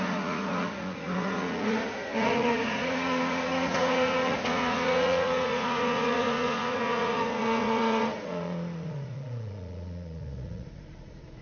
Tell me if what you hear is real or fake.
fake